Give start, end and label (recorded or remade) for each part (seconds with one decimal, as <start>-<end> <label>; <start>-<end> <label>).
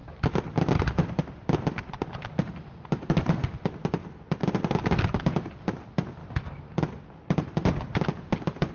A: 0.0-8.7 recorded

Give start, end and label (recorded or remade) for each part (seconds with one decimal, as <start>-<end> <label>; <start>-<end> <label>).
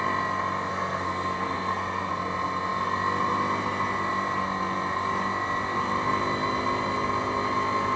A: 0.0-0.7 recorded; 0.7-2.1 remade; 2.1-8.0 recorded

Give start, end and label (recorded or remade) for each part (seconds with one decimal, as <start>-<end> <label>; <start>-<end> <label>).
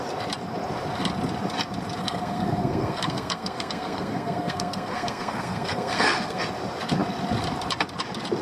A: 0.0-2.0 recorded; 2.0-6.4 remade; 6.4-8.4 recorded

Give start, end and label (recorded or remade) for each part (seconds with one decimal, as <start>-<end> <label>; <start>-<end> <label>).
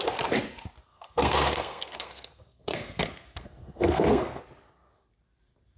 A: 0.0-0.9 recorded; 0.9-4.4 remade; 4.4-5.8 recorded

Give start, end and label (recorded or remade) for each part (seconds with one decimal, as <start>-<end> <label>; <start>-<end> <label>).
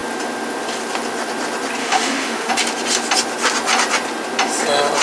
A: 0.0-1.8 recorded; 1.8-2.5 remade; 2.5-5.0 recorded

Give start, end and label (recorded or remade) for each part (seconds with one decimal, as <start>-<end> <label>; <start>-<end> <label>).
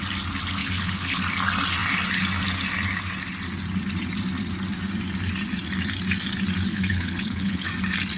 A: 0.0-0.6 recorded; 0.6-1.2 remade; 1.2-6.7 recorded; 6.7-7.7 remade; 7.7-8.2 recorded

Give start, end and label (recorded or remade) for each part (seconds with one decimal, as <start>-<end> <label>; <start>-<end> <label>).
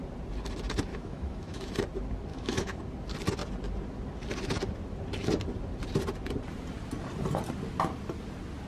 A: 0.0-0.9 recorded; 0.9-1.8 remade; 1.8-2.3 recorded; 2.3-2.8 remade; 2.8-8.7 recorded